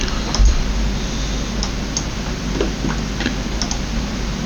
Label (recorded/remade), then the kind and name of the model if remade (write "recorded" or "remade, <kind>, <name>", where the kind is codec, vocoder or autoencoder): recorded